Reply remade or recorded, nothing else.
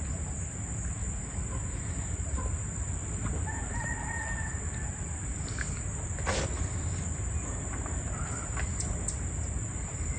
recorded